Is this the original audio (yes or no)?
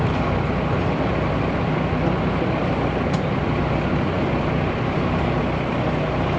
yes